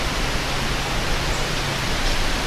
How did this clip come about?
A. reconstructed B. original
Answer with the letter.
B